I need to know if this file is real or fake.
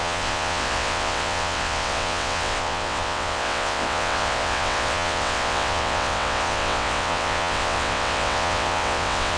fake